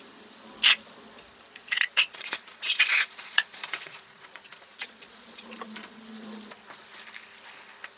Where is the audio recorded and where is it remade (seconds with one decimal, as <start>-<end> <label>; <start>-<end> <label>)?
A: 0.0-1.6 recorded; 1.6-6.0 remade; 6.0-8.0 recorded